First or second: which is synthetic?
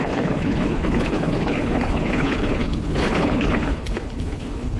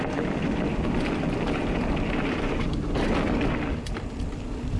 first